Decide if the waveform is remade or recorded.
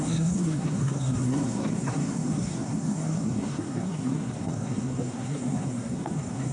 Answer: remade